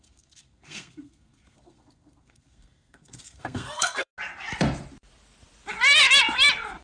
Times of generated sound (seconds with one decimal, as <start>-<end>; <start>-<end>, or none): 0.0-4.1